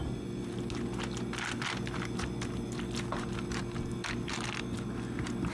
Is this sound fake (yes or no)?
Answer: no